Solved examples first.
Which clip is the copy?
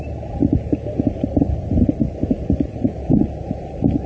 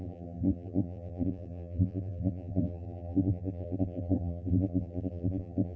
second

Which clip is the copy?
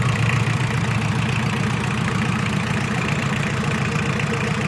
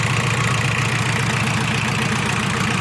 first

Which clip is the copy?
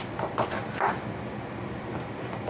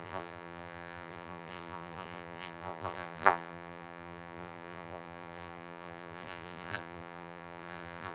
second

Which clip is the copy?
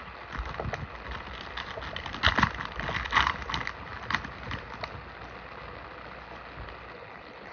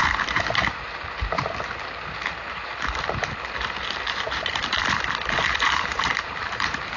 second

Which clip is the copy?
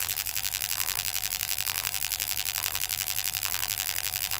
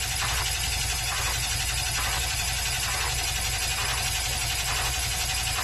first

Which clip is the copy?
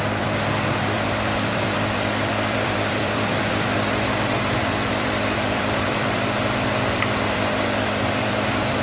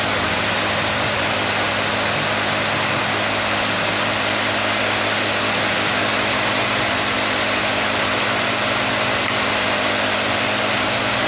first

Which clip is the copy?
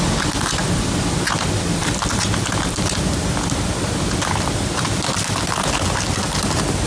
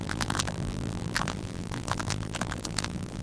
second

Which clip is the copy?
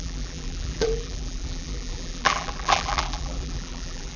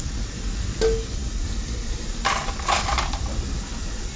first